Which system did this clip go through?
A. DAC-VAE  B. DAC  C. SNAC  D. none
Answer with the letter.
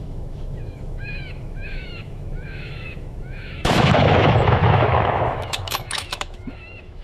A